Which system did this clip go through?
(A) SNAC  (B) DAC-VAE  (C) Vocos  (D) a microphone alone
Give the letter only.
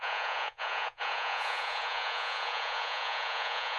C